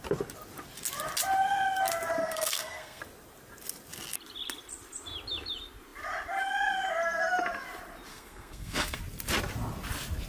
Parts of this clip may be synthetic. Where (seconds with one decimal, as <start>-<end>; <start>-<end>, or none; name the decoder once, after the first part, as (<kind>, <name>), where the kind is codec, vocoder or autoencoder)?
2.2-3.0 (codec, SNAC); 8.1-9.0